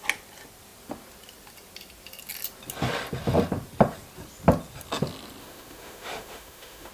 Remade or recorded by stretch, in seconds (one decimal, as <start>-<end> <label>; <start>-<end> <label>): 0.0-5.4 recorded; 5.4-6.9 remade